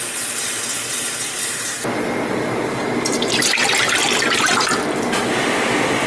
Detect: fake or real real